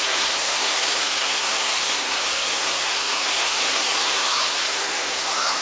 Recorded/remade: remade